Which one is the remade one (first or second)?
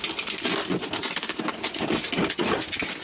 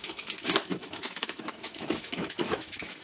second